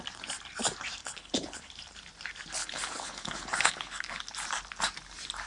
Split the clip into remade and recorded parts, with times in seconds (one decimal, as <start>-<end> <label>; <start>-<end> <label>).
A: 0.0-1.0 recorded; 1.0-1.7 remade; 1.7-2.6 recorded; 2.6-4.2 remade; 4.2-5.5 recorded